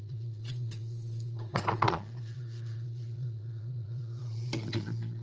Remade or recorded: remade